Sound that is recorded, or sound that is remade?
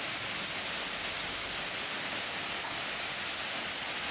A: recorded